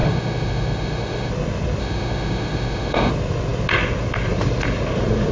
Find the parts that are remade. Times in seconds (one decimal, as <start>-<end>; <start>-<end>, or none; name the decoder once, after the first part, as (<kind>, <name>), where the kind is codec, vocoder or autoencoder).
0.0-1.3 (autoencoder, DAC-VAE); 1.8-3.1